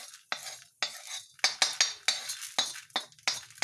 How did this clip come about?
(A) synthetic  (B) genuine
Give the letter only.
B